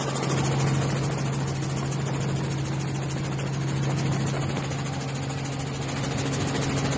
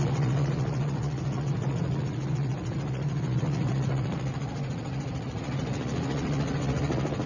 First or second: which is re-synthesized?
second